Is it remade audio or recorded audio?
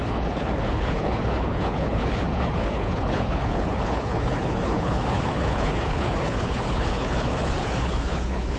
remade